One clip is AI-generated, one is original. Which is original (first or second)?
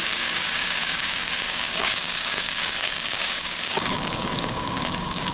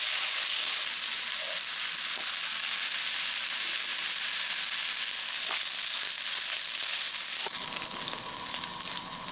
second